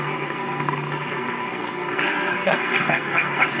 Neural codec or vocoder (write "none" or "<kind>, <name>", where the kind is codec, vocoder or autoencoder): codec, SNAC